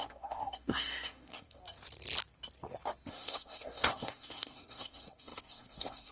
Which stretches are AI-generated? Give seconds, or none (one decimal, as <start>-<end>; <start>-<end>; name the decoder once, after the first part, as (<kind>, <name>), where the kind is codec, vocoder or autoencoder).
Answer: 0.0-1.6 (codec, SNAC); 3.1-6.1